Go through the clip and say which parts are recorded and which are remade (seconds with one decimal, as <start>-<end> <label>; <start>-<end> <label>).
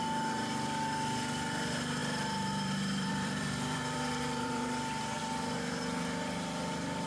0.0-2.0 recorded; 2.0-5.2 remade; 5.2-7.1 recorded